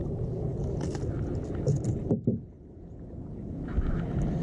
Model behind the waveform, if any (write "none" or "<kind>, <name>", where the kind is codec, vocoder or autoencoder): none